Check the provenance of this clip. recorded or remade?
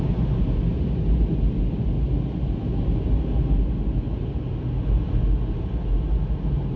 recorded